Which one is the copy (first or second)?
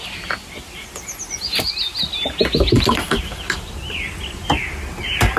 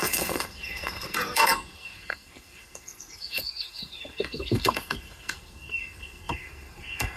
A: second